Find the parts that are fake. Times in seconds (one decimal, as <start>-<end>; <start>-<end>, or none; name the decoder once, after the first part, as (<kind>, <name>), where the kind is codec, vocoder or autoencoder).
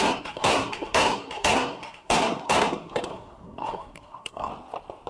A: 0.0-4.5 (codec, SNAC)